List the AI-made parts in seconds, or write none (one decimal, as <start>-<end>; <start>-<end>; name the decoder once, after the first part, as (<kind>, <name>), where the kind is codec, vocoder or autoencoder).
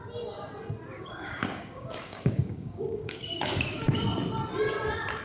0.9-4.0 (codec, DAC)